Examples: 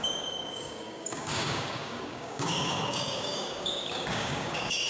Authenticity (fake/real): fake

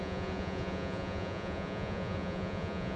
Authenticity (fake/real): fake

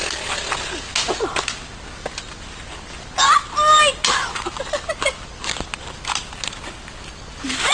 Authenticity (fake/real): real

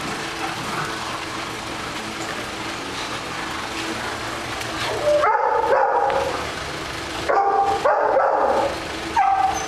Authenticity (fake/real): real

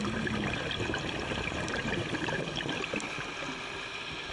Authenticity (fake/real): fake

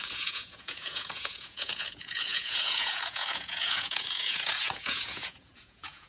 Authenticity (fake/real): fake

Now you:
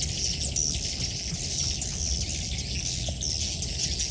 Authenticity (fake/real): real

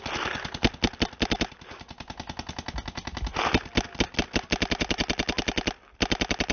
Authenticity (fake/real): real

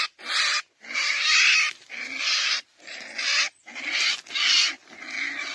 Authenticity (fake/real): real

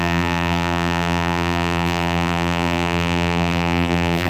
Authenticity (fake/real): fake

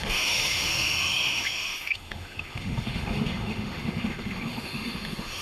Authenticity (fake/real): fake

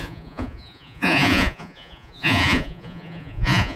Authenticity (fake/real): fake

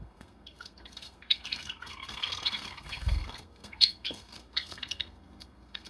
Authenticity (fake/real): fake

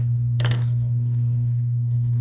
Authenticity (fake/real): fake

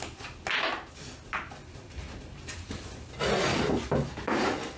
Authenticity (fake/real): real